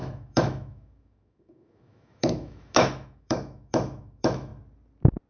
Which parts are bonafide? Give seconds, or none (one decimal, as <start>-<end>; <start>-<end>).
4.5-5.3